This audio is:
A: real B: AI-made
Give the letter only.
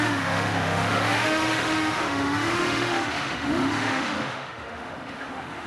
B